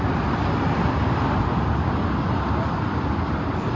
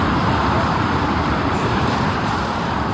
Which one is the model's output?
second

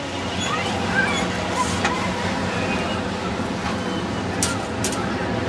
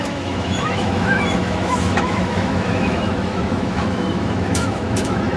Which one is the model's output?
second